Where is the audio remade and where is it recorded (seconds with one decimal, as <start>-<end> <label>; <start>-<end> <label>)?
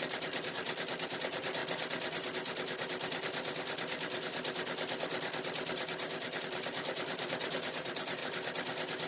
0.0-1.6 remade; 1.6-6.4 recorded; 6.4-8.2 remade; 8.2-9.1 recorded